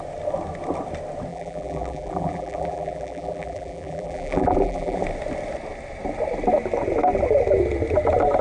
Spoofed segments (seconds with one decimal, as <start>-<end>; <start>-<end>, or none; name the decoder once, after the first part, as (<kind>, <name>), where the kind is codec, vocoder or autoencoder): 1.3-5.0 (vocoder, BigVGAN v2)